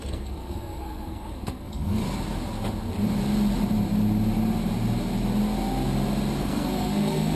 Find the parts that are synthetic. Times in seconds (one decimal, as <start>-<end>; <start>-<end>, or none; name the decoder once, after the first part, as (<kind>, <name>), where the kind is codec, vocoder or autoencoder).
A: 0.0-2.0 (codec, SNAC); 6.4-7.4